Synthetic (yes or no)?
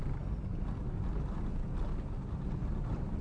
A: no